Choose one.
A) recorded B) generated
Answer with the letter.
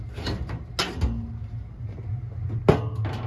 A